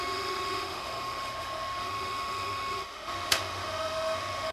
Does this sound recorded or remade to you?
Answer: remade